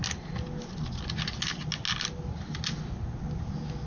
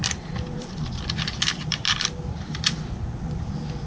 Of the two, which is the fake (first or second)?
second